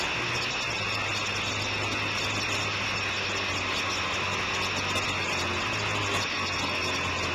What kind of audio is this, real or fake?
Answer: real